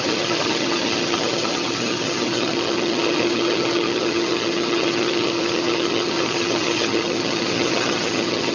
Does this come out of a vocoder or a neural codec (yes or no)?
yes